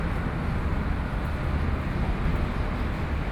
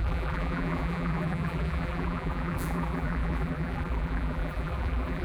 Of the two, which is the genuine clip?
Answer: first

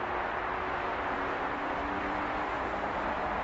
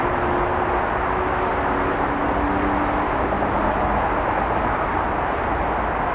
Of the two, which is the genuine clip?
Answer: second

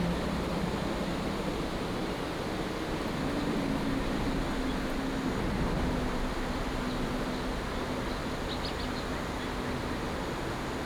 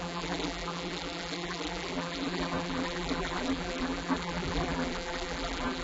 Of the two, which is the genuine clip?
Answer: first